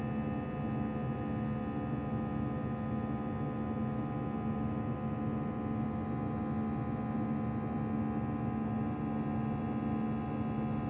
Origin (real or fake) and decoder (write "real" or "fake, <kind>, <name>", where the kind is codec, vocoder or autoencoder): real